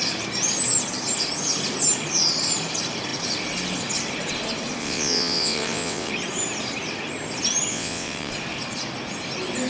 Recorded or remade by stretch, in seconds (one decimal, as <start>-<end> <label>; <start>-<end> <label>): 0.0-4.8 recorded; 4.8-6.1 remade; 6.1-7.7 recorded; 7.7-8.3 remade; 8.3-9.7 recorded